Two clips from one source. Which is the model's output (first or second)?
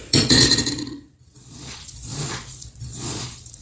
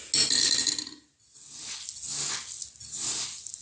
first